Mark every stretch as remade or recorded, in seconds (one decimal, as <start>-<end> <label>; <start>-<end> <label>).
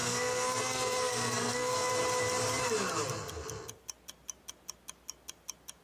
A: 0.0-1.9 remade; 1.9-5.8 recorded